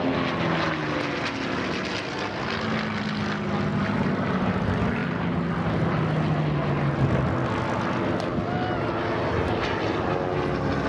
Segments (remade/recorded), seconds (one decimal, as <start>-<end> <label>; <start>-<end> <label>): 0.0-10.9 recorded